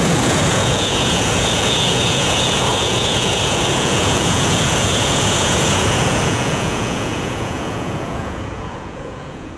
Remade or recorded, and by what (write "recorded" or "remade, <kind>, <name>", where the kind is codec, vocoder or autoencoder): remade, vocoder, Vocos